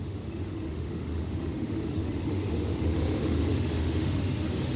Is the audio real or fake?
fake